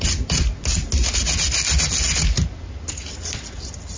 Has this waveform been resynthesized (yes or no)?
no